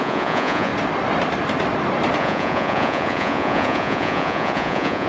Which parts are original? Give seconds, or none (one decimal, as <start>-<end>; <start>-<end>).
0.7-2.2